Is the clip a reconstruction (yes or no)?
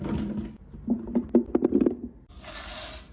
no